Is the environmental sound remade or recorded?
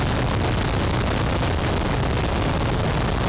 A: recorded